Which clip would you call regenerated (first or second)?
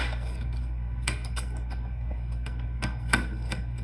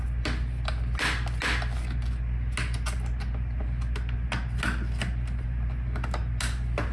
first